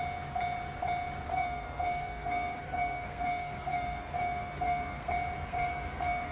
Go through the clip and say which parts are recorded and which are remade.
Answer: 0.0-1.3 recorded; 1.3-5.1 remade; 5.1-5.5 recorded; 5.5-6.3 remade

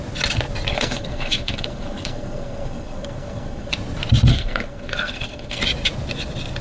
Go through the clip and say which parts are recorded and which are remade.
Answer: 0.0-0.7 recorded; 0.7-3.7 remade; 3.7-4.3 recorded; 4.3-5.6 remade; 5.6-6.6 recorded

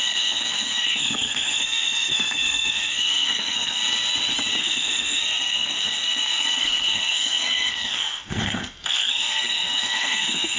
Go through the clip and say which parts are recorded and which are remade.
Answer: 0.0-3.8 remade; 3.8-4.6 recorded; 4.6-10.6 remade

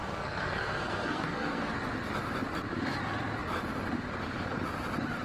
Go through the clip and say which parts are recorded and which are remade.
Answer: 0.0-1.7 remade; 1.7-5.2 recorded

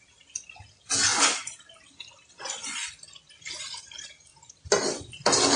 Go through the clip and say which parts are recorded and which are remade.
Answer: 0.0-5.6 recorded

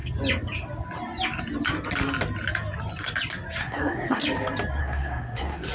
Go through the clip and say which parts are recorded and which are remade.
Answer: 0.0-3.6 recorded; 3.6-4.2 remade; 4.2-4.8 recorded; 4.8-5.7 remade

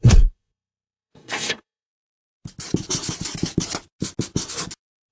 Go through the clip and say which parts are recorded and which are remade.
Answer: 0.0-1.9 remade; 1.9-5.1 recorded

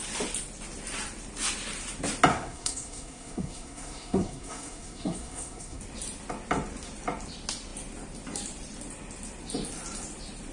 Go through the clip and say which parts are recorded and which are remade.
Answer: 0.0-2.3 recorded; 2.3-5.8 remade; 5.8-10.5 recorded